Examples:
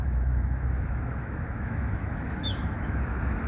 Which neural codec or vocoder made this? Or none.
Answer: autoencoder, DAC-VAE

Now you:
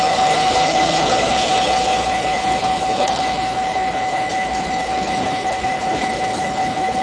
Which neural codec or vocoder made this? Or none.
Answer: codec, HILCodec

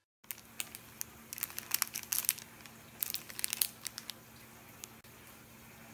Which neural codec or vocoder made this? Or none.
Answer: none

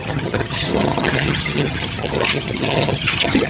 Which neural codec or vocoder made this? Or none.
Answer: vocoder, HiFi-GAN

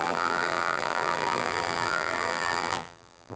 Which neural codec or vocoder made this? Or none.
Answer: vocoder, BigVGAN v2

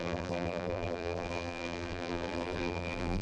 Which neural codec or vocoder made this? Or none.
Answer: vocoder, BigVGAN v2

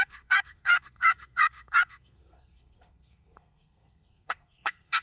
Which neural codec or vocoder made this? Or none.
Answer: codec, SNAC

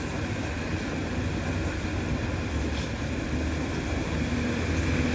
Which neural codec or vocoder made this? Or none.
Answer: none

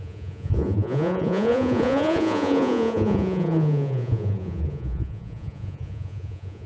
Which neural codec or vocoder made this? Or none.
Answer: vocoder, Vocos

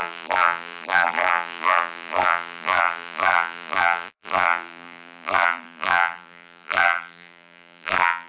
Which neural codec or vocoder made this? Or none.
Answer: vocoder, BigVGAN v2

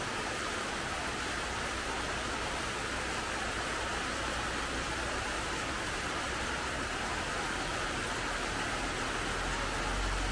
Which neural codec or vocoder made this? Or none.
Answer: none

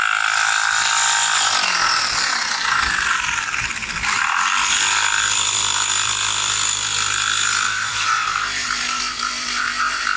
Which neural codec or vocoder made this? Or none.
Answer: vocoder, BigVGAN v2